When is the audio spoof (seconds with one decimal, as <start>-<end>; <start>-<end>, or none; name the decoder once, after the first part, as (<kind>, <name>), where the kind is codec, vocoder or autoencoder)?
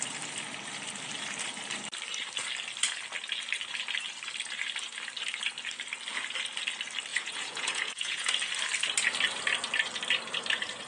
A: 7.1-8.3 (vocoder, Vocos)